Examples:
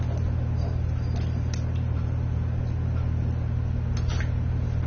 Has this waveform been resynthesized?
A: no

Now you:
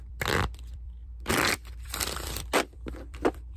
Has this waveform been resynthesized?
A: yes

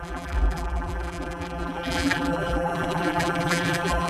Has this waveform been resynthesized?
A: yes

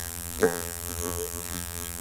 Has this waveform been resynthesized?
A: yes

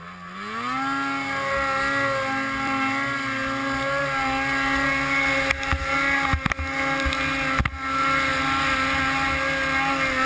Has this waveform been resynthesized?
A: no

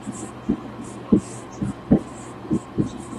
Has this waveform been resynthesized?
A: no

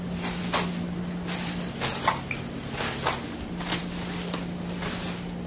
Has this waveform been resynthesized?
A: yes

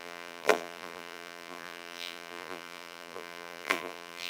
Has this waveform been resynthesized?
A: yes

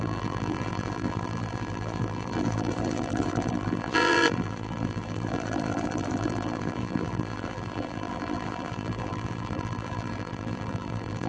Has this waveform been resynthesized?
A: yes